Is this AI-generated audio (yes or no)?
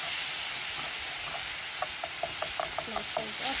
no